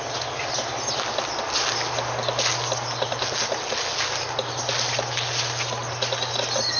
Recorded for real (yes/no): yes